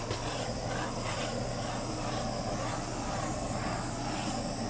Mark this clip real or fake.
real